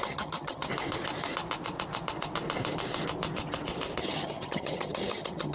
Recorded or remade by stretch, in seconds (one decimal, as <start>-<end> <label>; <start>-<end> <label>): 0.0-0.7 remade; 0.7-4.0 recorded; 4.0-5.5 remade